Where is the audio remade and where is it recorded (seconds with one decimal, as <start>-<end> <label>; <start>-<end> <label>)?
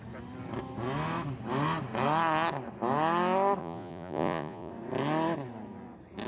0.0-3.6 recorded; 3.6-4.7 remade; 4.7-6.3 recorded